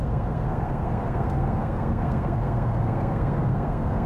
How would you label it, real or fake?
fake